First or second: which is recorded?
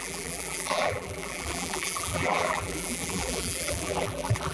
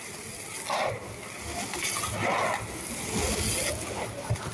second